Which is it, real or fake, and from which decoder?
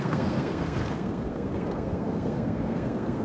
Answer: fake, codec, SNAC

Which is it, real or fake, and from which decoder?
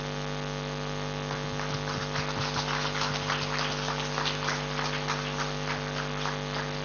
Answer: real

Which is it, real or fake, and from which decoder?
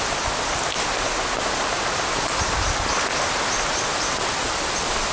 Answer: real